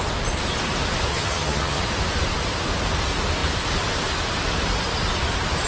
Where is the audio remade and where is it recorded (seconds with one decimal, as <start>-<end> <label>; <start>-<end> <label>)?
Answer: 0.0-1.1 recorded; 1.1-1.8 remade; 1.8-5.7 recorded